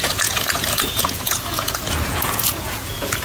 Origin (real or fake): fake